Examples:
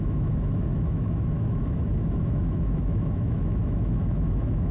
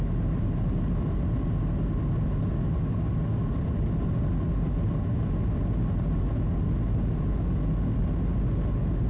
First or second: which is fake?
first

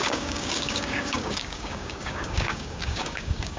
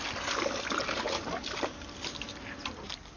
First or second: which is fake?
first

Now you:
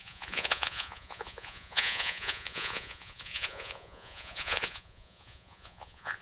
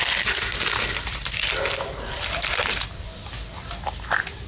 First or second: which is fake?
first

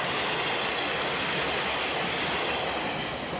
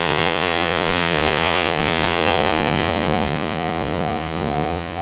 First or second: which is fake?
second